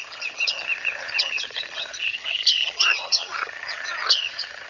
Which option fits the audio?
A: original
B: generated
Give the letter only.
B